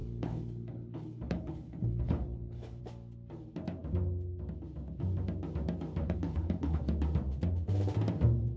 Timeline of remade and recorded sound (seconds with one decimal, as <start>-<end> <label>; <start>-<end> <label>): 0.0-2.8 remade; 2.8-6.0 recorded; 6.0-6.8 remade; 6.8-8.6 recorded